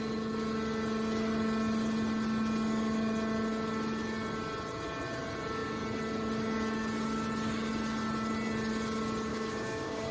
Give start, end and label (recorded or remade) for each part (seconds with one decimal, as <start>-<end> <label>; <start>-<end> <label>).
0.0-9.3 recorded; 9.3-10.1 remade